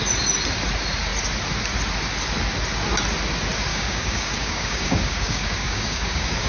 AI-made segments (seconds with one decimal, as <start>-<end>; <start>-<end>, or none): 3.7-6.5